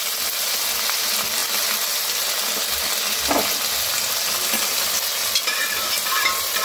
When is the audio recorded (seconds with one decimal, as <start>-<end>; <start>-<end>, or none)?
0.0-6.6

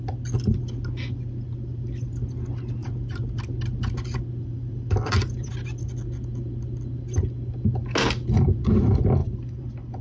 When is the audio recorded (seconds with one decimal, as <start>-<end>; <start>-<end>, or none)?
0.0-4.4; 5.5-9.2

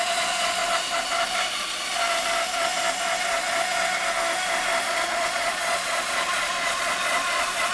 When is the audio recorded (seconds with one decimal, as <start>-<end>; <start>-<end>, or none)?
0.6-4.8

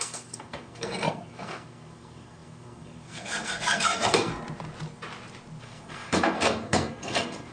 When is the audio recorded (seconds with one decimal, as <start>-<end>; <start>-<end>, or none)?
4.3-5.6

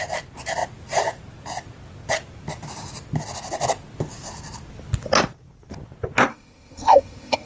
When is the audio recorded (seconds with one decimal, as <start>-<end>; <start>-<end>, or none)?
0.0-6.3